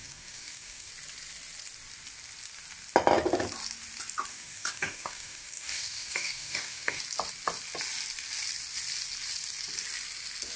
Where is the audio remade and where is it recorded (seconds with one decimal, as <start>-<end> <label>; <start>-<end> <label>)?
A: 0.0-0.9 remade; 0.9-4.3 recorded; 4.3-7.0 remade; 7.0-10.6 recorded